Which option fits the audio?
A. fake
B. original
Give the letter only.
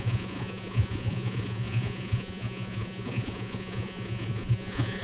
A